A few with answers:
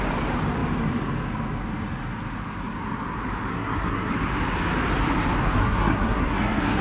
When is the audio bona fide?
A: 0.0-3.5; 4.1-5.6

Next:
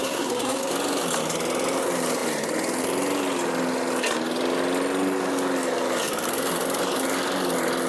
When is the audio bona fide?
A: 0.7-7.9

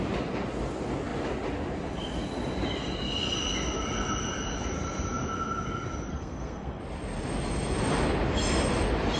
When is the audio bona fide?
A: 0.0-6.1; 6.8-9.2

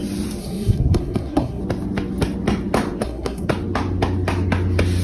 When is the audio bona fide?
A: 0.0-0.4; 1.6-3.0; 3.5-5.0

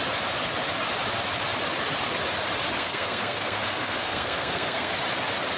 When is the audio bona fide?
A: 0.0-2.8; 4.9-5.6

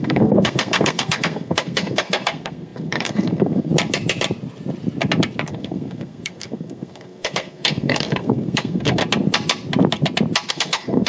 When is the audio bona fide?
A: 3.7-5.5; 9.0-10.5

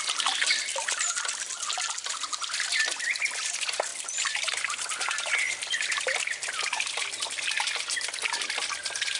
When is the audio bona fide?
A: 0.0-9.2

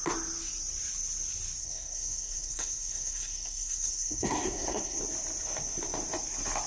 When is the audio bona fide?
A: 0.0-1.6; 5.0-6.7